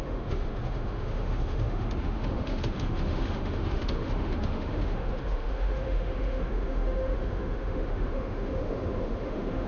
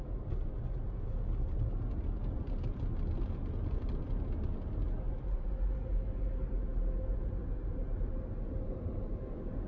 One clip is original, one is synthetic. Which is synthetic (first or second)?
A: first